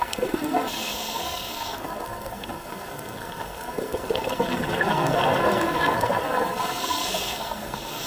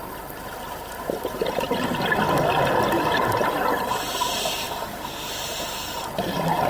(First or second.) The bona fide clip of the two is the second